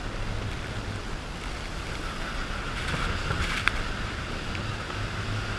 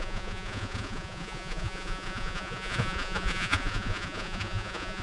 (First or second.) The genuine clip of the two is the first